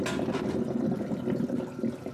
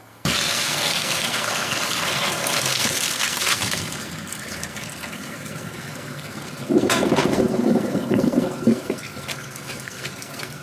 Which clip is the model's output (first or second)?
second